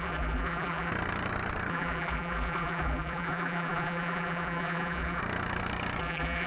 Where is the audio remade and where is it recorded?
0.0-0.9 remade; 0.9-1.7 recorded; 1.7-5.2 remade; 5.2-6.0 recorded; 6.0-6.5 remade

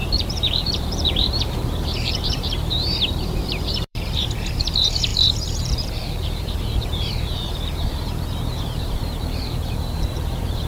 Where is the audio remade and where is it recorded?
0.0-10.7 remade

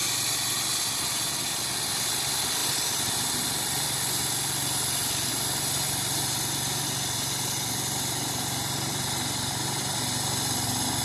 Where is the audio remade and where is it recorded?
0.0-11.0 recorded

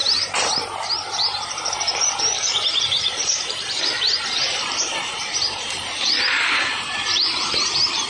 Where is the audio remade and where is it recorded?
0.0-2.8 recorded; 2.8-8.1 remade